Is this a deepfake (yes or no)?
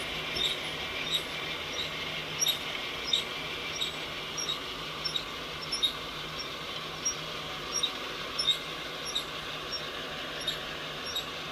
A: no